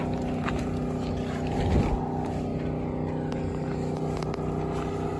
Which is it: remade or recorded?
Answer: recorded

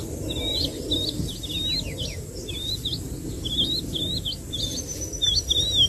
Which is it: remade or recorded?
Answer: recorded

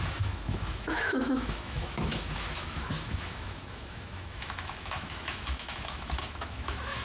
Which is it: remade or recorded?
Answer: remade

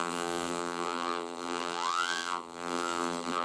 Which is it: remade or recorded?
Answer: remade